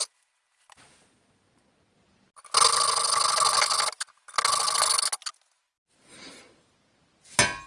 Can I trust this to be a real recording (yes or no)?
yes